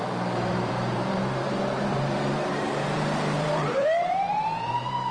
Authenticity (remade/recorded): remade